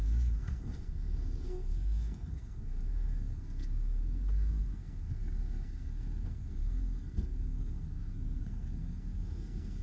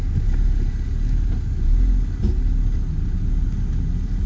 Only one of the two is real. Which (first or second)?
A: second